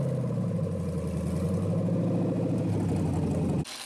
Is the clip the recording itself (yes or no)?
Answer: yes